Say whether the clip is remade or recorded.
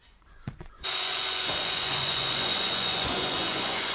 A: remade